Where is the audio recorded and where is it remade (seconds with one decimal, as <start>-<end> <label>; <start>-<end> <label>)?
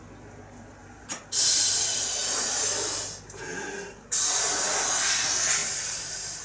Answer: 0.0-0.8 recorded; 0.8-2.6 remade; 2.6-5.6 recorded; 5.6-6.4 remade